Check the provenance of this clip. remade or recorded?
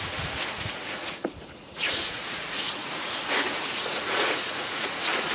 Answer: remade